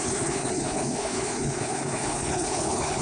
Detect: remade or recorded remade